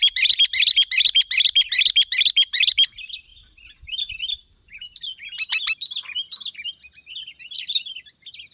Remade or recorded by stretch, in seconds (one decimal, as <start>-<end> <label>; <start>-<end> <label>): 0.0-8.5 recorded